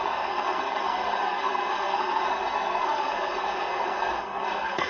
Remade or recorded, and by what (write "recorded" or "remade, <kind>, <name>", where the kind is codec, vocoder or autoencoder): remade, codec, SNAC